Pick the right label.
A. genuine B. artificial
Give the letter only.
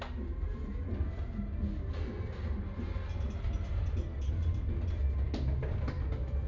A